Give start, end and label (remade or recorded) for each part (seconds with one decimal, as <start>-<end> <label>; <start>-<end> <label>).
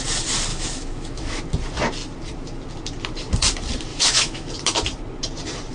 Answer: 0.0-0.5 recorded; 0.5-1.4 remade; 1.4-3.9 recorded; 3.9-4.5 remade; 4.5-5.7 recorded